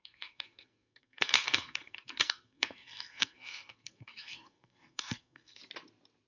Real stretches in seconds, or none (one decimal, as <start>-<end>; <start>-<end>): 5.6-6.3